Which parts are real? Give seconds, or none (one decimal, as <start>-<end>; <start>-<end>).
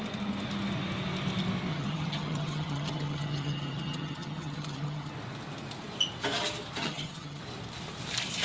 0.0-1.7; 5.1-6.8; 7.4-8.4